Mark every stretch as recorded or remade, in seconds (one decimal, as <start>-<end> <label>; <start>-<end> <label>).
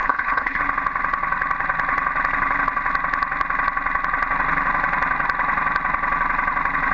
0.0-0.6 remade; 0.6-6.9 recorded